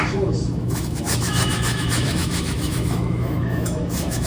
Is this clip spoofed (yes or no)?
yes